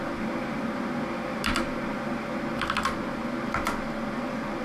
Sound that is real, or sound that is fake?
real